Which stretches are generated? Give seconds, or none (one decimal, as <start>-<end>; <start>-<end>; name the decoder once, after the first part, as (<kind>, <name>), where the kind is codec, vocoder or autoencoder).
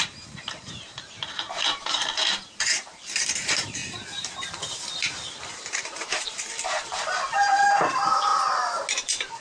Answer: 0.0-3.8 (vocoder, BigVGAN v2); 5.5-8.3; 8.9-9.4